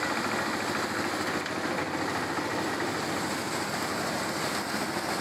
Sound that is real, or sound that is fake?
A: real